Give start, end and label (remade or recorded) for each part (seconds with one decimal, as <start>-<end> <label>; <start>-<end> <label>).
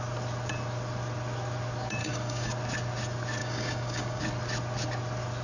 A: 0.0-2.0 recorded; 2.0-2.5 remade; 2.5-3.4 recorded; 3.4-4.2 remade; 4.2-5.4 recorded